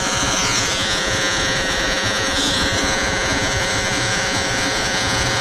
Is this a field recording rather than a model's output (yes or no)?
no